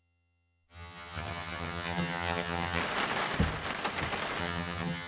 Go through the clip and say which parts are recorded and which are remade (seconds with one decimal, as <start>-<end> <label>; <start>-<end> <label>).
0.0-2.8 remade; 2.8-4.4 recorded; 4.4-5.1 remade